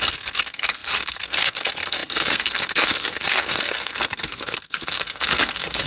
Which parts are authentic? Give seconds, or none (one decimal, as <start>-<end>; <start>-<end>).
none